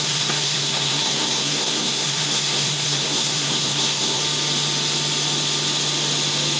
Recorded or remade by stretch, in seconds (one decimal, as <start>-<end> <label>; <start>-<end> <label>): 0.0-4.2 remade; 4.2-6.6 recorded